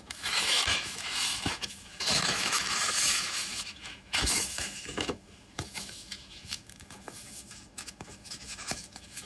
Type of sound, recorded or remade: remade